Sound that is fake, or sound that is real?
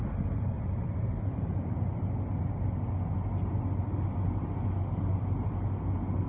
real